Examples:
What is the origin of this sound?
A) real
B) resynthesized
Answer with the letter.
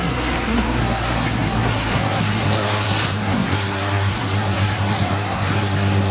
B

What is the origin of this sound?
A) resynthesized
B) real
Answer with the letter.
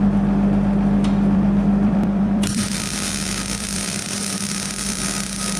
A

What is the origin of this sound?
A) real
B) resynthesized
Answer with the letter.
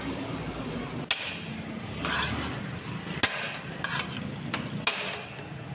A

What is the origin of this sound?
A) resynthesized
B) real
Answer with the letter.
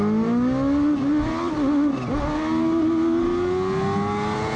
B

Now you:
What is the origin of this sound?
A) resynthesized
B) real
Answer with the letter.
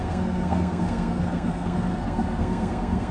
A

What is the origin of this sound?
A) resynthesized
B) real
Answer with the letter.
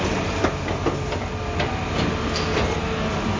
B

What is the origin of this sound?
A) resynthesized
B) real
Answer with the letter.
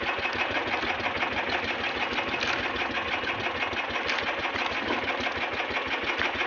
B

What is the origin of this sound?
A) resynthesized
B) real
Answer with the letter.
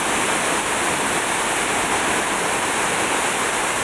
B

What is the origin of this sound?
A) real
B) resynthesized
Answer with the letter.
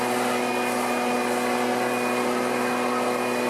A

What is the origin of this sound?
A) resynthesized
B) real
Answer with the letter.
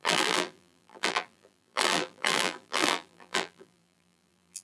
A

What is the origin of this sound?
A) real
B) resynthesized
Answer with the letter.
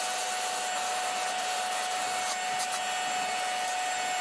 A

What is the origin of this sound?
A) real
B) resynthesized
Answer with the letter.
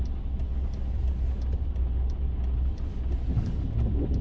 A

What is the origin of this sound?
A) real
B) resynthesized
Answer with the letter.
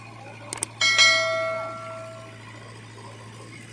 A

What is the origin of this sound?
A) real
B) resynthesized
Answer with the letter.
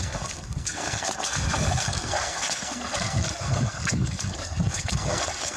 B